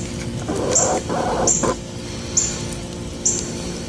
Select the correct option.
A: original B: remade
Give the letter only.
A